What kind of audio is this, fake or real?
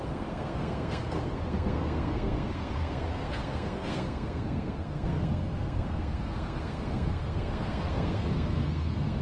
fake